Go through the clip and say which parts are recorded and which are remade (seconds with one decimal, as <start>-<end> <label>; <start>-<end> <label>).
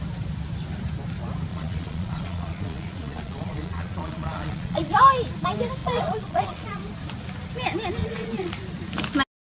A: 0.0-1.5 recorded; 1.5-5.0 remade; 5.0-5.8 recorded; 5.8-6.8 remade; 6.8-8.0 recorded; 8.0-8.5 remade; 8.5-9.5 recorded